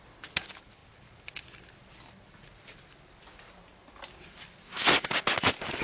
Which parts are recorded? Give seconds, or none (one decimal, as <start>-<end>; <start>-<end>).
0.0-5.8